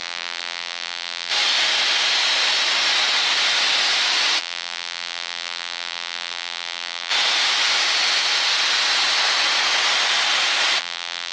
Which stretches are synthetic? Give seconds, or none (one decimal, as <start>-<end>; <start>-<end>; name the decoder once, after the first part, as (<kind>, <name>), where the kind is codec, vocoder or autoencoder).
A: 0.0-1.3 (vocoder, BigVGAN v2); 4.4-7.1; 10.8-11.3